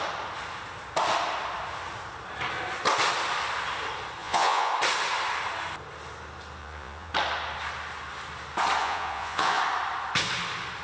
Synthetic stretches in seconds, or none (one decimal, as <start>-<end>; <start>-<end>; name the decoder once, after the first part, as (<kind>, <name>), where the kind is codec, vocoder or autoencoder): 4.2-4.7 (vocoder, Vocos); 6.6-7.1; 8.8-9.6